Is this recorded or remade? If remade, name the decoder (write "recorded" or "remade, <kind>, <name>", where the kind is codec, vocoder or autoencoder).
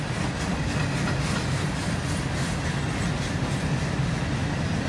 recorded